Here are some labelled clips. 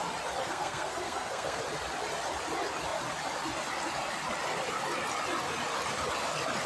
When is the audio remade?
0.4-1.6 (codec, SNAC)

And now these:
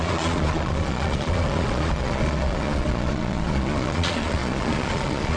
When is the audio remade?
0.0-5.4 (vocoder, Vocos)

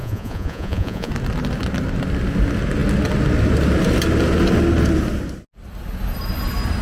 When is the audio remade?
0.0-1.1 (vocoder, Vocos)

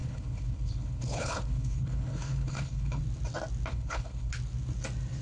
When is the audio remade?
0.0-3.0 (codec, HILCodec); 3.7-4.3